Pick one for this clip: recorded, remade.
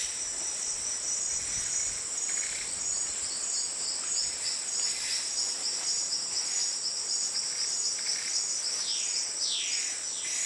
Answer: recorded